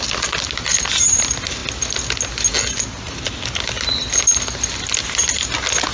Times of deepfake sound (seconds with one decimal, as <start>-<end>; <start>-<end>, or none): none